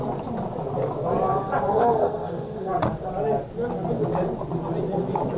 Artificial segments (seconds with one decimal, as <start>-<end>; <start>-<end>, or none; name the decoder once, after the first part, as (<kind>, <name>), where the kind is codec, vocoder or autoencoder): 1.7-2.7 (codec, SNAC)